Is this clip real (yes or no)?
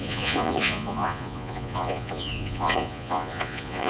no